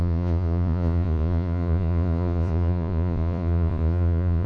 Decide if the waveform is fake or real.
fake